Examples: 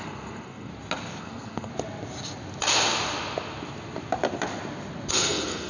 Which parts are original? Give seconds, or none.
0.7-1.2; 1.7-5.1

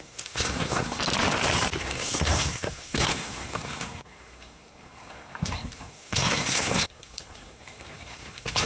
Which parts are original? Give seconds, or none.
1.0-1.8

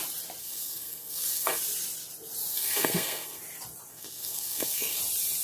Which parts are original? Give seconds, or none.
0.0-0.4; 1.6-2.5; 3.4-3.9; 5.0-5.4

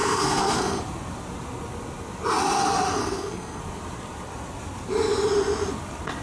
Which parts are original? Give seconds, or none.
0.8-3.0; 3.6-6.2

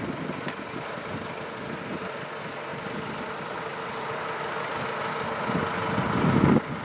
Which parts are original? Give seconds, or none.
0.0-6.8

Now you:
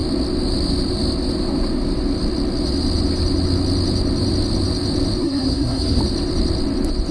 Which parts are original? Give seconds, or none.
0.0-5.2; 6.0-7.1